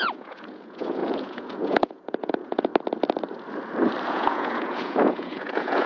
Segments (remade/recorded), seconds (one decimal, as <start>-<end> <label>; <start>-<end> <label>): 0.0-2.7 remade; 2.7-4.1 recorded; 4.1-5.9 remade